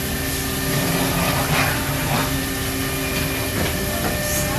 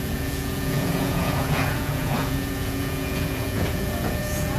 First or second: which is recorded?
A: first